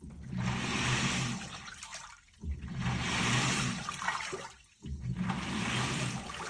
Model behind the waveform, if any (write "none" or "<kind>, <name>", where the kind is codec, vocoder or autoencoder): none